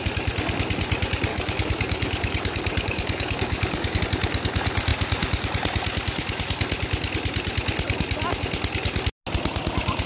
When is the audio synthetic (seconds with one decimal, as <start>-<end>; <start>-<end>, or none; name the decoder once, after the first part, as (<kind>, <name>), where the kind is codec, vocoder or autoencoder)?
1.3-4.0 (codec, DAC)